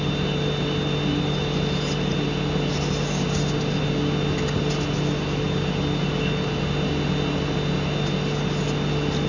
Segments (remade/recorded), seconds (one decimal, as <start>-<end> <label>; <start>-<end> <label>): 0.0-9.3 recorded